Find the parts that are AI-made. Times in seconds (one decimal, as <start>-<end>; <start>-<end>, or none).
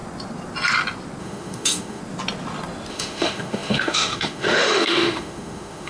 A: 1.2-2.0; 2.9-5.9